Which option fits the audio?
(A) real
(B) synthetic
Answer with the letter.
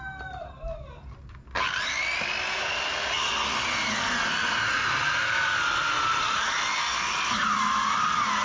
A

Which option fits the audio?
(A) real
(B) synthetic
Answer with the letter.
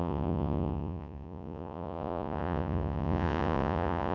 B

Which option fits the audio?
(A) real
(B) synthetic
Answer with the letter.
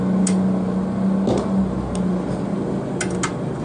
A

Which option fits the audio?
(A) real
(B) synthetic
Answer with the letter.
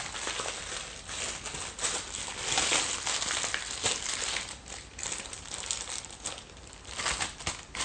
A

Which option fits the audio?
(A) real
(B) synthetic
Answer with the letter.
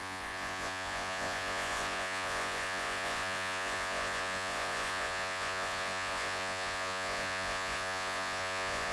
B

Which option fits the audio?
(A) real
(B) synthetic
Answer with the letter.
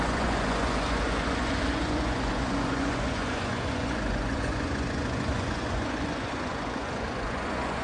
B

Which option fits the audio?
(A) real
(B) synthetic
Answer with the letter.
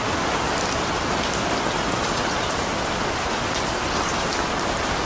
A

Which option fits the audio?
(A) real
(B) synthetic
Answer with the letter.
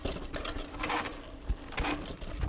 A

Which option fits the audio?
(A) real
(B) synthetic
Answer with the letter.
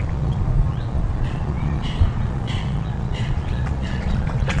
B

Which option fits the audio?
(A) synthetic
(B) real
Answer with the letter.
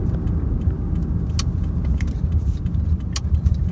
B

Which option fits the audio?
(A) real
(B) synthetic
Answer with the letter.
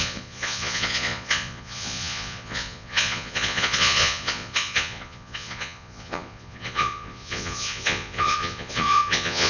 B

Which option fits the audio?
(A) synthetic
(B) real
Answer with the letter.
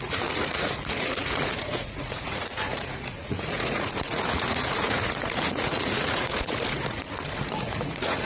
A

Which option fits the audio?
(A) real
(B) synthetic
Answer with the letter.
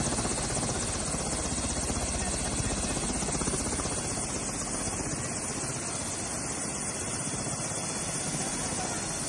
A